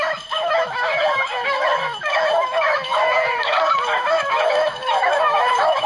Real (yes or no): no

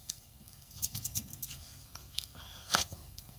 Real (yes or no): no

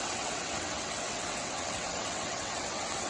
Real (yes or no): no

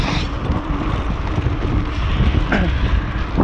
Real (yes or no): yes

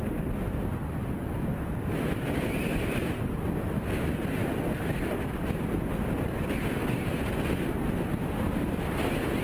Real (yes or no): yes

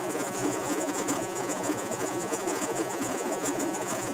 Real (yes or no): no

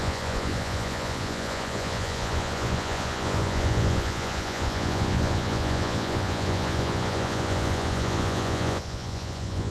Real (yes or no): no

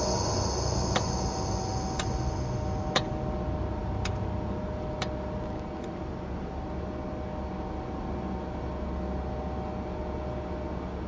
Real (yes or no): yes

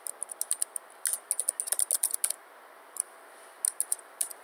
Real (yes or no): yes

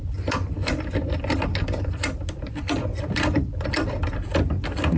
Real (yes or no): yes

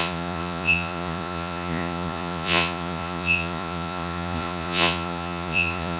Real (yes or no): no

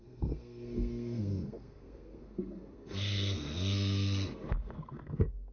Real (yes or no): no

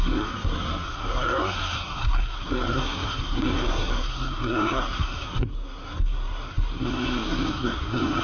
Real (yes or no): no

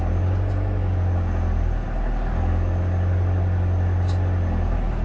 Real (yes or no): yes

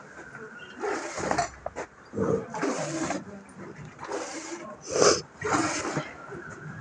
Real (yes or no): no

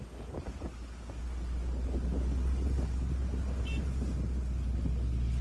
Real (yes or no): yes